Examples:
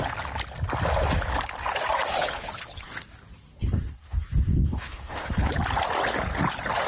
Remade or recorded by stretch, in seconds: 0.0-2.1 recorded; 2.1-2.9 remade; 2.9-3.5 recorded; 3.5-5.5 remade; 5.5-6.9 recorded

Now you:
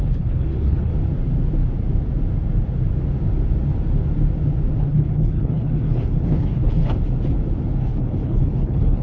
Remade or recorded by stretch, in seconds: 0.0-0.9 remade; 0.9-4.8 recorded; 4.8-6.8 remade; 6.8-7.8 recorded; 7.8-9.0 remade

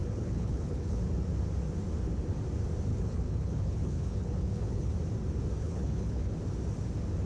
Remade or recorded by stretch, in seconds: 0.0-1.0 remade; 1.0-2.9 recorded; 2.9-4.9 remade; 4.9-5.6 recorded; 5.6-6.3 remade; 6.3-7.3 recorded